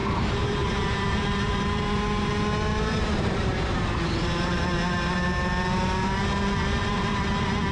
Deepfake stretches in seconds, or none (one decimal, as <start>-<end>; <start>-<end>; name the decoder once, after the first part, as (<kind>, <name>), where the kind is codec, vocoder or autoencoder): 0.0-2.3 (vocoder, BigVGAN v2); 2.7-4.6; 6.8-7.3